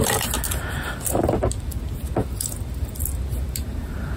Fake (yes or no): no